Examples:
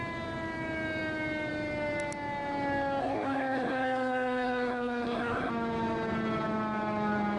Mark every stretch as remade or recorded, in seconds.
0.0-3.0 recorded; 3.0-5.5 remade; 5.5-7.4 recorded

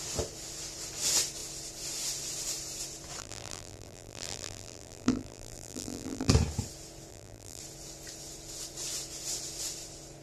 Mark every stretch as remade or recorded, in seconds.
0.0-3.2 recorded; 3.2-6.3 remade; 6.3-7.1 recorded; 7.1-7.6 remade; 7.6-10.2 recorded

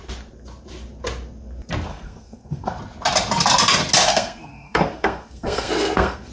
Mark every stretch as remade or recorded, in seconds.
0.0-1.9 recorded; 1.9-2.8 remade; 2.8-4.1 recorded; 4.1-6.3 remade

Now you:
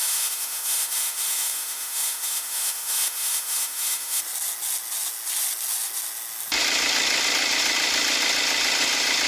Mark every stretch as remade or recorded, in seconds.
0.0-4.2 remade; 4.2-9.3 recorded